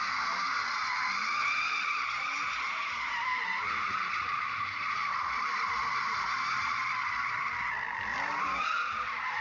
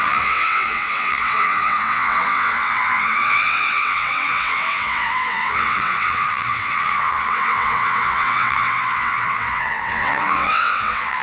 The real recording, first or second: first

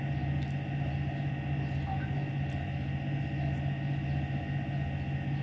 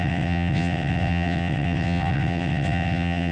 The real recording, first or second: first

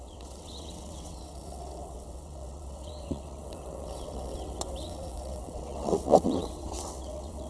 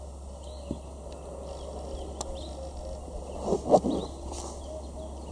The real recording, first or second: second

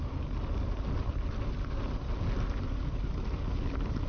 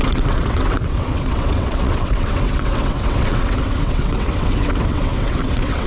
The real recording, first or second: first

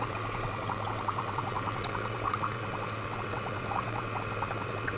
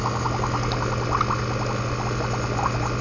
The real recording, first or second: second